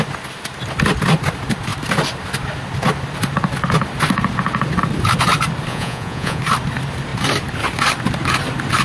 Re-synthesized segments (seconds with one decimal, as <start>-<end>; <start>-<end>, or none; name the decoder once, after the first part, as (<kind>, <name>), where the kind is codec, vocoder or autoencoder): 5.7-6.4 (vocoder, Vocos)